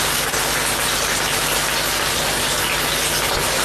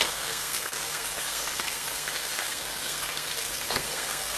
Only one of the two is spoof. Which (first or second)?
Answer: second